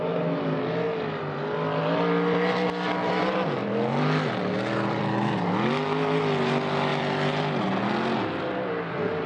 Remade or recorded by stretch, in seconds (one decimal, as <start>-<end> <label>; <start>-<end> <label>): 0.0-3.6 recorded; 3.6-5.0 remade; 5.0-6.9 recorded; 6.9-7.6 remade; 7.6-9.3 recorded